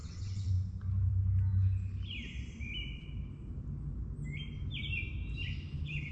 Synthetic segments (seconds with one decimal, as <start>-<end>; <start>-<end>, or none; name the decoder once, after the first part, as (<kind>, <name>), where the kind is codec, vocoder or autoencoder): 0.0-0.5 (vocoder, WaveNeXt)